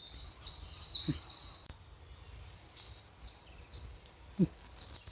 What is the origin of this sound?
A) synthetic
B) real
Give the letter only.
B